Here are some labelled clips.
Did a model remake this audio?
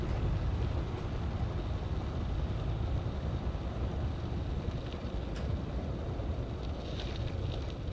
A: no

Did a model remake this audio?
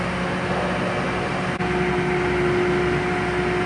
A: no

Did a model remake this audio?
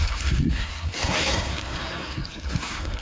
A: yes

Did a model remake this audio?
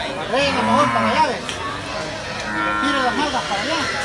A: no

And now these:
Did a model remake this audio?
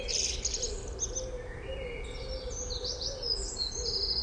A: no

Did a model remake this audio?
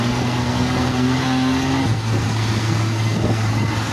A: yes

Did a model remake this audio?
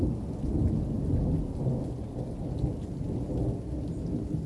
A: no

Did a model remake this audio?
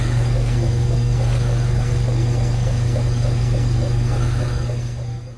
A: yes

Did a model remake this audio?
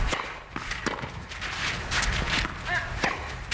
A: no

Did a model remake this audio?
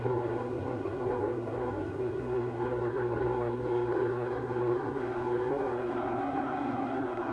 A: yes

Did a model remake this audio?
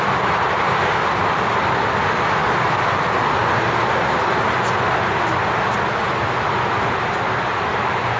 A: no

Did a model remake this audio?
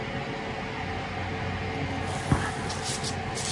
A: no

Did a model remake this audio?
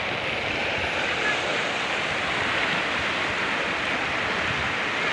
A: no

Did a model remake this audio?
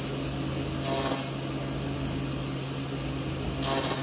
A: no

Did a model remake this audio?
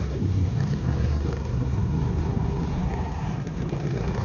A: yes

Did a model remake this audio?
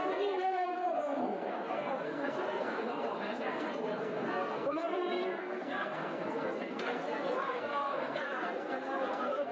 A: yes